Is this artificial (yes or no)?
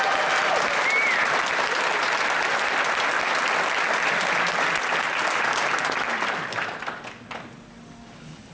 no